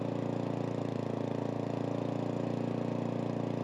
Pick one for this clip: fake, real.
real